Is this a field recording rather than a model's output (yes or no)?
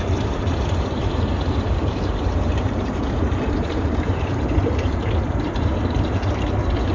no